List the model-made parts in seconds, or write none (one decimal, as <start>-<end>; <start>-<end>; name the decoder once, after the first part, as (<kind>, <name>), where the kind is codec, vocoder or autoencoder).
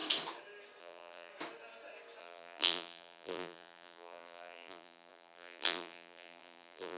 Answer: 0.8-1.3 (vocoder, BigVGAN v2); 2.2-7.0